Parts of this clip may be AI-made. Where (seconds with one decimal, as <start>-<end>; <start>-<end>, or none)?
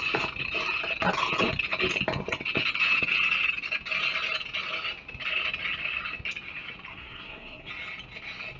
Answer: 6.9-7.7